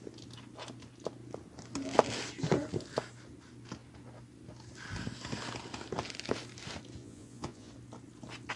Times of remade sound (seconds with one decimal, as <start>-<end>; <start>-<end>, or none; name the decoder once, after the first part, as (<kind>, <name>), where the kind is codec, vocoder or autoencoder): 7.0-7.7 (vocoder, Vocos)